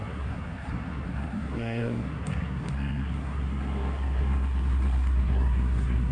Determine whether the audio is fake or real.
fake